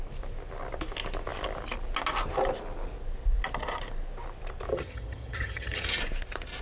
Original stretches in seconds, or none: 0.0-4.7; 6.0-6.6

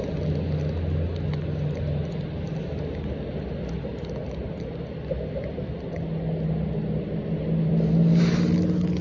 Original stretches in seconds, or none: 0.0-9.0

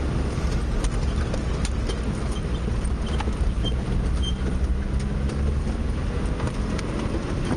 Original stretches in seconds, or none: 0.0-7.6

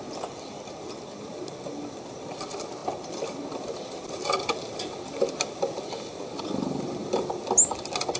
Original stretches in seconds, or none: 0.0-8.2

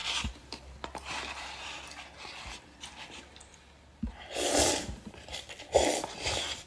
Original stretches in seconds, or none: 0.0-6.7

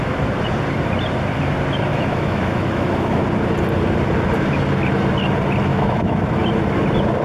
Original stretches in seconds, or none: 0.0-1.9; 3.2-5.7; 6.4-7.2

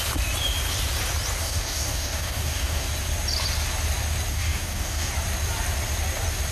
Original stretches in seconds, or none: 0.0-1.4; 2.9-4.3; 5.1-6.5

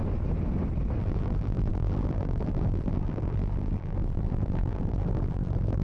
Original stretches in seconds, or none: 0.0-1.0